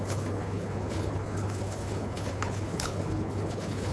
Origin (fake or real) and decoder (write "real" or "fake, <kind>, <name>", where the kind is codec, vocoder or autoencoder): fake, codec, HILCodec